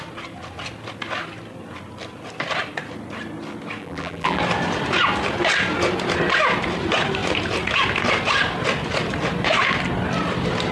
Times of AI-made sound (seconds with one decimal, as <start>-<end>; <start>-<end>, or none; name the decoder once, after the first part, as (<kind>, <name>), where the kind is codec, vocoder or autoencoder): 3.8-4.4 (vocoder, BigVGAN v2)